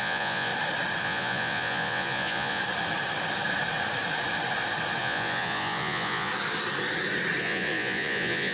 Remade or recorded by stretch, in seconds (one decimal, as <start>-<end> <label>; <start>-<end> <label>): 0.0-0.5 remade; 0.5-1.0 recorded; 1.0-2.6 remade; 2.6-5.0 recorded; 5.0-6.3 remade; 6.3-7.4 recorded; 7.4-8.5 remade